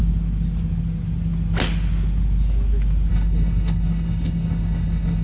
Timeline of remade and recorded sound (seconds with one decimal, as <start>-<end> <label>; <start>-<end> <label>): 0.0-3.1 recorded; 3.1-5.2 remade